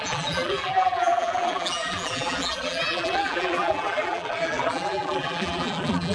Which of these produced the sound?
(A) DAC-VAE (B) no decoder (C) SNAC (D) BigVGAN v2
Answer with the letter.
D